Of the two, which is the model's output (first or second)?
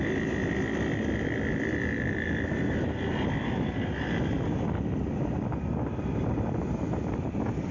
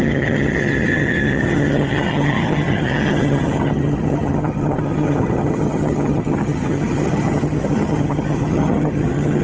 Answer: second